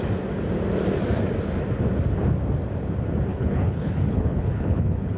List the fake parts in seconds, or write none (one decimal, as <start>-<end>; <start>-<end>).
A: 3.3-5.2